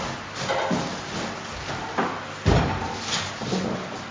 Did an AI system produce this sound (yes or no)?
no